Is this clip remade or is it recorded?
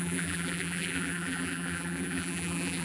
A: remade